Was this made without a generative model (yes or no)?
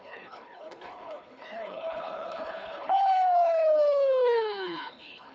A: no